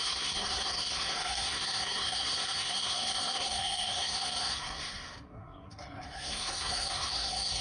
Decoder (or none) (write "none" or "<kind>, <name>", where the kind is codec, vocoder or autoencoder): codec, SNAC